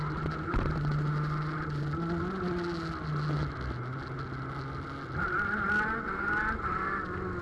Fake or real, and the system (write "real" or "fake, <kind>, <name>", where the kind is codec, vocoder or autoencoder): real